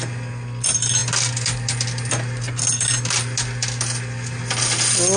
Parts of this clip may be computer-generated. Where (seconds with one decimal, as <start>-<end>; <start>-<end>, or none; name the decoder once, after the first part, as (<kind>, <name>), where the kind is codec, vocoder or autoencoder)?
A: none